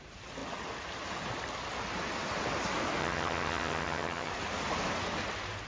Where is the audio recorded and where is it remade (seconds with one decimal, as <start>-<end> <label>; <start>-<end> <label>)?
0.0-3.0 recorded; 3.0-4.3 remade; 4.3-5.7 recorded